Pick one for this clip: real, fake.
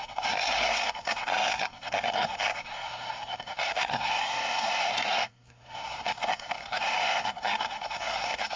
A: fake